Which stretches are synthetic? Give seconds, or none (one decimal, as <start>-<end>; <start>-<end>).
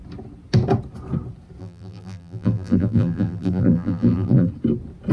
1.6-4.5